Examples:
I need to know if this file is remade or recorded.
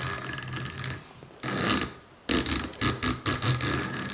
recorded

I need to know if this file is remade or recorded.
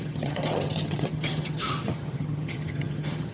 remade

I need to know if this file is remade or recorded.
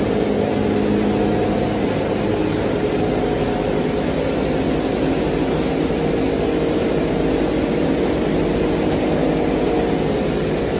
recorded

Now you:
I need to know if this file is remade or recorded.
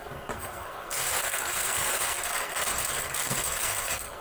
remade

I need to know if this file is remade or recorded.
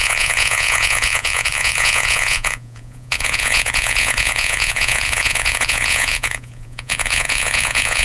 remade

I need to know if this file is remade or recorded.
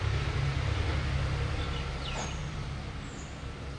recorded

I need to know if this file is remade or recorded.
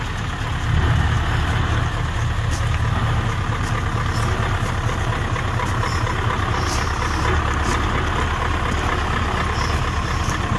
recorded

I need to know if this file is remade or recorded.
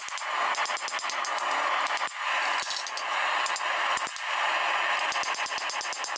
recorded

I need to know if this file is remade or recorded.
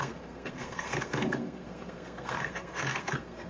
remade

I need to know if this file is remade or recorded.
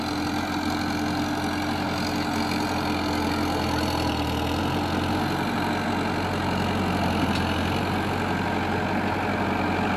recorded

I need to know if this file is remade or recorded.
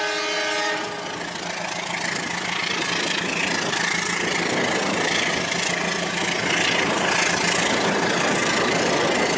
recorded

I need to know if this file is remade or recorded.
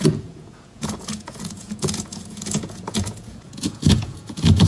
remade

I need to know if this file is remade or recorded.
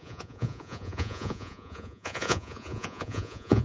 remade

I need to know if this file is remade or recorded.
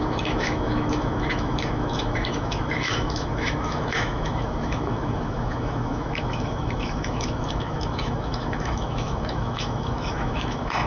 remade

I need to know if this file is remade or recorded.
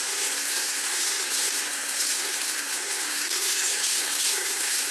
remade